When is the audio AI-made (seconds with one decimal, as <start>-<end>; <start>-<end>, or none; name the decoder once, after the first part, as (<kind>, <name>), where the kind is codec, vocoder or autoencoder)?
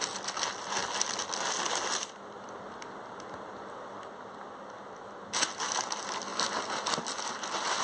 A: none